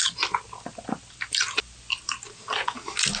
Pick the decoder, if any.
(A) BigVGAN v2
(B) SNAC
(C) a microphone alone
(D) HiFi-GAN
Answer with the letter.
C